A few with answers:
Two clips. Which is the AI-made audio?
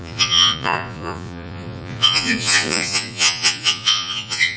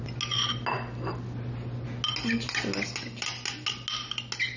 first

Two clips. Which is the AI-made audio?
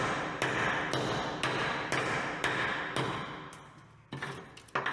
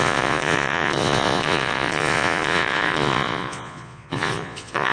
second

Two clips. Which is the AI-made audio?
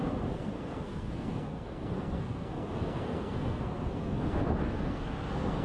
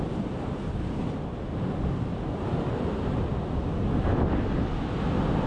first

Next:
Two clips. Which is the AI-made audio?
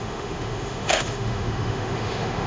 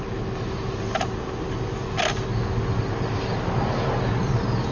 first